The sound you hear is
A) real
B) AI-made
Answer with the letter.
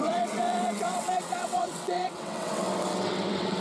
B